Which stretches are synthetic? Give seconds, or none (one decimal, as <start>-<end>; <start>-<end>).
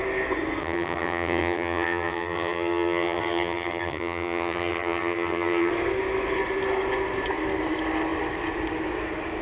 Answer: 0.6-5.7